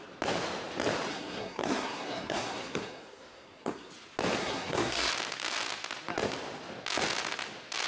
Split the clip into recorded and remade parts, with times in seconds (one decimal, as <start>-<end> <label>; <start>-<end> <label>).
0.0-1.1 recorded; 1.1-3.9 remade; 3.9-4.4 recorded; 4.4-5.1 remade; 5.1-7.9 recorded